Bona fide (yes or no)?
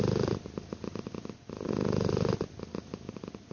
yes